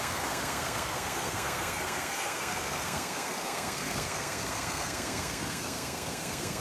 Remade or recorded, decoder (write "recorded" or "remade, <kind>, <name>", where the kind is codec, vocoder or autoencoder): remade, codec, SNAC